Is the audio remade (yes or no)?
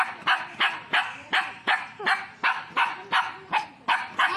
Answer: no